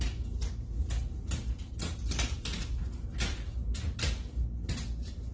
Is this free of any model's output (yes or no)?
yes